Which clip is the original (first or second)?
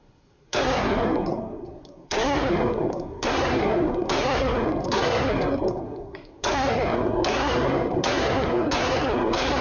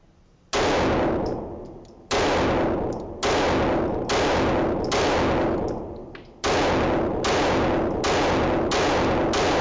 second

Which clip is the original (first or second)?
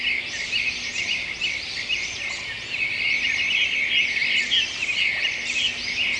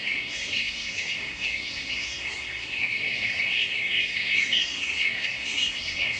first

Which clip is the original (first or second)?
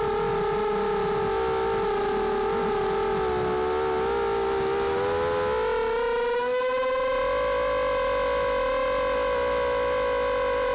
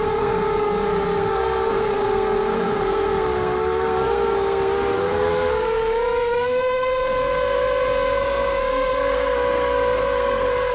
first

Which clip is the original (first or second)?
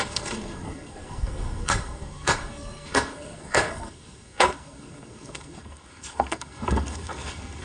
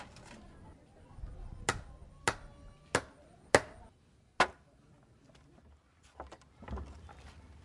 second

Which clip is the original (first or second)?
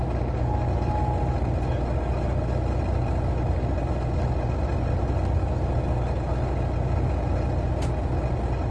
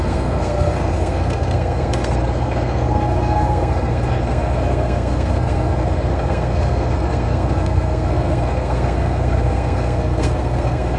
first